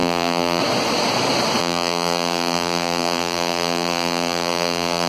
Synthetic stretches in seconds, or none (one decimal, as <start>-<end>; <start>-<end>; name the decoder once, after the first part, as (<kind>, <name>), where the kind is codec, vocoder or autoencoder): 0.0-0.6 (vocoder, BigVGAN v2); 1.6-5.1